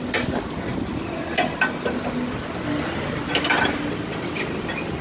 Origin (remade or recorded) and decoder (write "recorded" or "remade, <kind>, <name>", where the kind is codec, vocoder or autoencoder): recorded